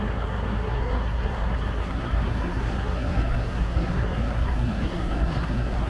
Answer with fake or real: fake